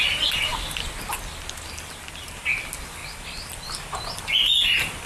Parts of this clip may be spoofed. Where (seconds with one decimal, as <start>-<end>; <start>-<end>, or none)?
none